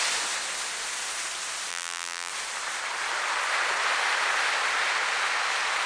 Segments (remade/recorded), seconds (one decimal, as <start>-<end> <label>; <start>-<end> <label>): 0.0-1.7 recorded; 1.7-2.3 remade; 2.3-5.9 recorded